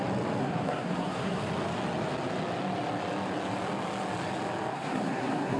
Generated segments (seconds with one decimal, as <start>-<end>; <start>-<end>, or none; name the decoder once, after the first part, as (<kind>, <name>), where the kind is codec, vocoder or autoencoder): 0.4-1.4 (codec, SNAC); 4.7-5.6